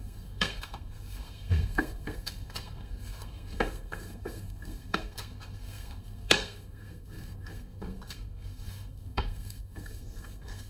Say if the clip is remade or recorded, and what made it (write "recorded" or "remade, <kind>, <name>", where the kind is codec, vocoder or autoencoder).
remade, codec, SNAC